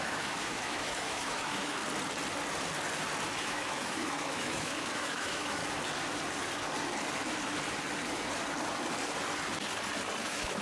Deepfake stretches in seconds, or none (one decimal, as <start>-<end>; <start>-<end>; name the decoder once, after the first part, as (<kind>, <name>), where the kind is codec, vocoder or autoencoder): 0.0-1.8 (autoencoder, DAC-VAE); 3.4-5.6; 10.2-10.6